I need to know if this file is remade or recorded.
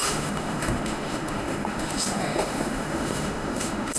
remade